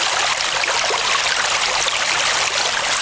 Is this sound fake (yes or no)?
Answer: no